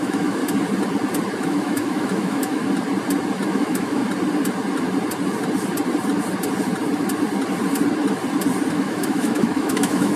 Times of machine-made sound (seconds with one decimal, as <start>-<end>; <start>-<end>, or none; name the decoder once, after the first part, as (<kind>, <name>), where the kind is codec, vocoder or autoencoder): 0.0-0.4 (autoencoder, DAC-VAE); 1.4-2.6; 3.5-4.0; 8.7-10.2